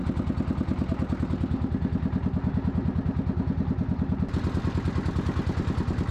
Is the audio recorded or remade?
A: recorded